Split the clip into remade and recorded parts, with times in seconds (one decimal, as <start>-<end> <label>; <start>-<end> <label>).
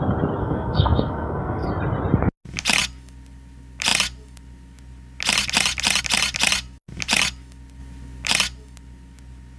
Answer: 0.0-0.4 recorded; 0.4-1.7 remade; 1.7-9.6 recorded